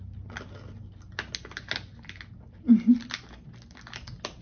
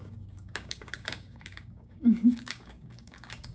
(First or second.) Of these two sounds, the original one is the first